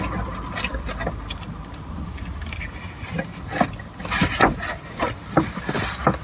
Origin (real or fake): real